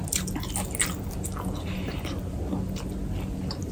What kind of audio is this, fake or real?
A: real